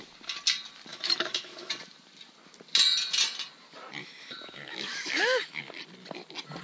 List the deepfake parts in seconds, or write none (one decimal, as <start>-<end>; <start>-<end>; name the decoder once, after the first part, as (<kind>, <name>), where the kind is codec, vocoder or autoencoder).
0.9-1.7 (autoencoder, DAC-VAE); 4.0-5.6